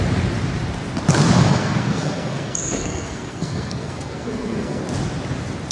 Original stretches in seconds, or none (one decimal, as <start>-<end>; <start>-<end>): 0.0-1.4; 4.8-5.7